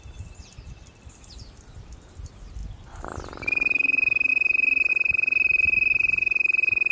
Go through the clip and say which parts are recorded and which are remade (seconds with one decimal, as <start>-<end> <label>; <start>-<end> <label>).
0.0-6.9 recorded